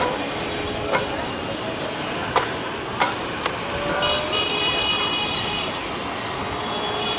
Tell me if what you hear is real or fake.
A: real